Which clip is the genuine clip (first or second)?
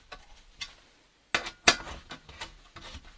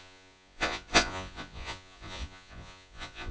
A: first